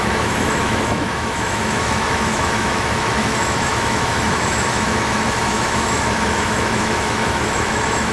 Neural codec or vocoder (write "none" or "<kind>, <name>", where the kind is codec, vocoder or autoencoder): autoencoder, DAC-VAE